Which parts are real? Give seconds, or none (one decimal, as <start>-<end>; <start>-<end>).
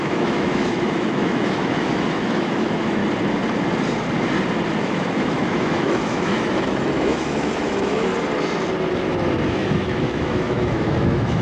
3.0-4.8; 8.1-9.5